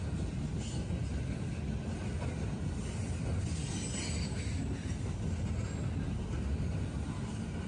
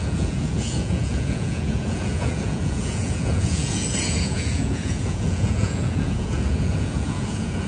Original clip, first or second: first